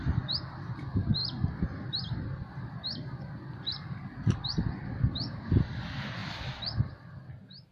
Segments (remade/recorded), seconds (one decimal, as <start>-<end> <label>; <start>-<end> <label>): 0.0-7.7 recorded